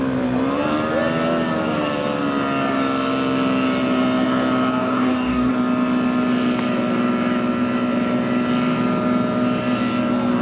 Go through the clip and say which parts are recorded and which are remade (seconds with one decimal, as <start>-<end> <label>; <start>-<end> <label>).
0.0-4.8 recorded; 4.8-5.5 remade; 5.5-10.4 recorded